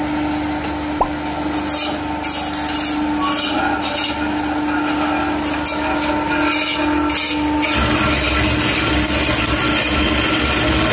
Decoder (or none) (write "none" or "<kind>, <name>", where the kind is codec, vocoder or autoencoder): none